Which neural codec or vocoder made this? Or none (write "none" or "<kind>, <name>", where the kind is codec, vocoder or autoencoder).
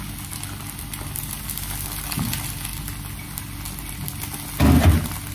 none